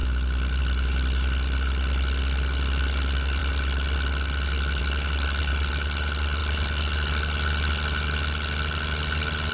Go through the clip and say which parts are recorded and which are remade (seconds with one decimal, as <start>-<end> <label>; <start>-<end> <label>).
0.0-9.5 recorded